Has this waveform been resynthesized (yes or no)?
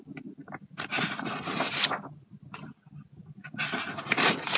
no